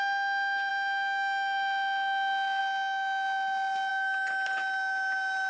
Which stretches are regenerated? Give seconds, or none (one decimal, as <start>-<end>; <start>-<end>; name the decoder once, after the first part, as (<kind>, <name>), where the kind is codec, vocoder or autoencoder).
none